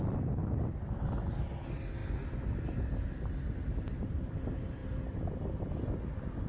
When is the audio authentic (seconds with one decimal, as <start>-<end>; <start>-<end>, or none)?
0.0-6.5